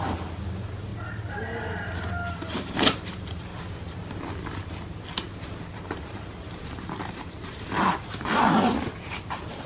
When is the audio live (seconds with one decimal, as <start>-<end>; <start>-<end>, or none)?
0.9-2.3; 3.5-5.3